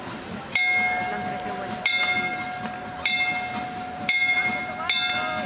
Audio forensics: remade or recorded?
recorded